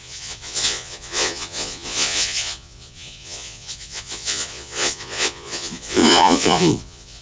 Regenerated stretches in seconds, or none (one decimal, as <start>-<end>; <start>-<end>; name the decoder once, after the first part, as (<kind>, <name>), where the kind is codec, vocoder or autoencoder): 0.0-7.2 (vocoder, Vocos)